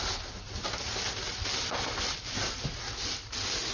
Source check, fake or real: real